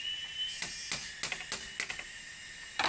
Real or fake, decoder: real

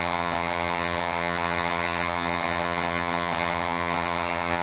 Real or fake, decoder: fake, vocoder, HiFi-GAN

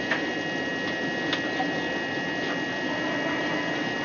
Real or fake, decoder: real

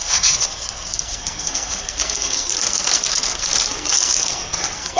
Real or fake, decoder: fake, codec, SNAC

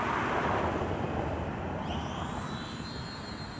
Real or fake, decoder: real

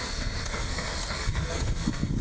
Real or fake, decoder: fake, codec, SNAC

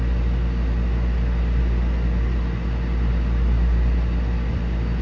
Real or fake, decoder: real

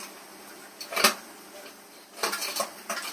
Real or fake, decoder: real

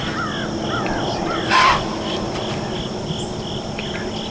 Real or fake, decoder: real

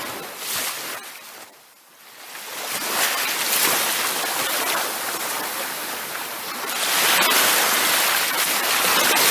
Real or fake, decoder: real